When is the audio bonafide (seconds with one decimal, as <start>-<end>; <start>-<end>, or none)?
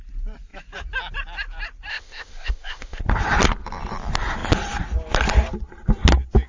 0.0-1.9; 3.0-6.5